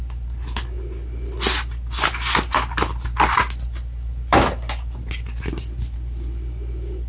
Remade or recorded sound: recorded